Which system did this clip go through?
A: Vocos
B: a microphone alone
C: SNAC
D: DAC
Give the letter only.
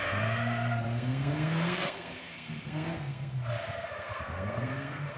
C